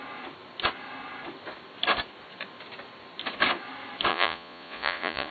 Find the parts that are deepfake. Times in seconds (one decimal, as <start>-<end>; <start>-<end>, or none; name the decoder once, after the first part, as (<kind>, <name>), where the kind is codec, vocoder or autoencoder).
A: 4.1-5.3 (vocoder, Vocos)